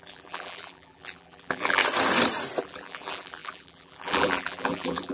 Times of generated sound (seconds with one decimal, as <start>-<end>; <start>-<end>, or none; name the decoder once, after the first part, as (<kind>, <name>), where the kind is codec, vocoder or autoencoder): 0.0-1.8 (vocoder, BigVGAN v2); 2.6-5.1